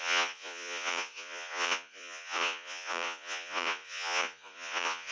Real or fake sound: fake